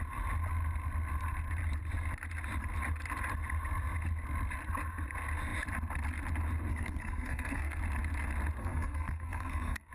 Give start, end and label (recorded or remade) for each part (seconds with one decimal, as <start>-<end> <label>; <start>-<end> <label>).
0.0-6.7 recorded; 6.7-7.8 remade; 7.8-8.6 recorded; 8.6-9.9 remade